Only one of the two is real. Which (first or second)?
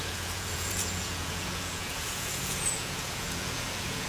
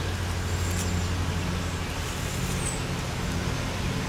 second